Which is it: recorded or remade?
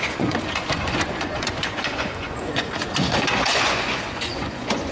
remade